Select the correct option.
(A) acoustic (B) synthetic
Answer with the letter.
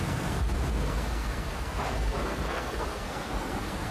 B